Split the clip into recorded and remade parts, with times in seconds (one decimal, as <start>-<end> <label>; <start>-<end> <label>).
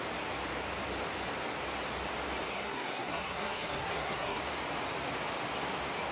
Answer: 0.0-2.5 recorded; 2.5-4.4 remade; 4.4-6.1 recorded